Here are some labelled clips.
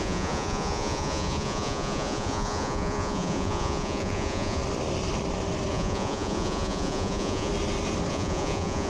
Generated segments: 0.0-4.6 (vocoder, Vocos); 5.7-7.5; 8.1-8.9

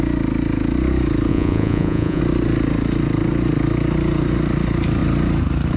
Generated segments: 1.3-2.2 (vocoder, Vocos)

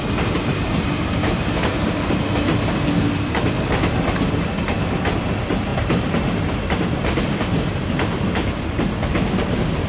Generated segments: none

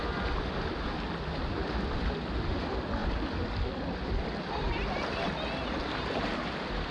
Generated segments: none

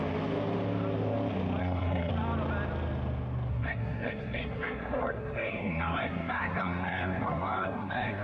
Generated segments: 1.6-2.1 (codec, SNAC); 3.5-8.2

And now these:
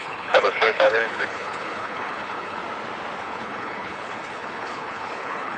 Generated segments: 0.0-2.6 (codec, HILCodec); 3.2-5.6

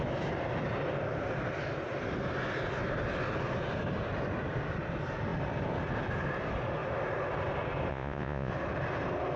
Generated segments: 7.9-8.5 (vocoder, Vocos)